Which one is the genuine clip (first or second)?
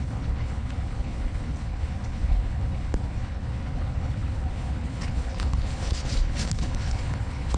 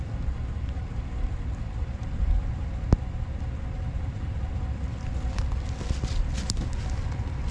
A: second